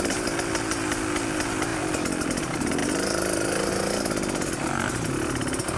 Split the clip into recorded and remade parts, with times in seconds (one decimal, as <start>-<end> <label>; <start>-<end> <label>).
0.0-5.8 recorded